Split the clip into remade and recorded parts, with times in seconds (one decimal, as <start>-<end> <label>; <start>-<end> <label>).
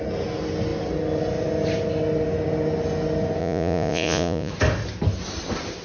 0.0-3.4 recorded; 3.4-4.5 remade; 4.5-5.8 recorded